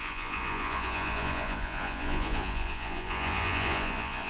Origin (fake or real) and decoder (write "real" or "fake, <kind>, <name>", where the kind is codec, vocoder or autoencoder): fake, vocoder, Vocos